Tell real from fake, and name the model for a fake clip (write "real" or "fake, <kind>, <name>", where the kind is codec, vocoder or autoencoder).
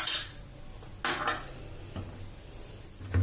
real